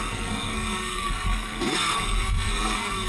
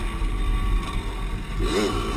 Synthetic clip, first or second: first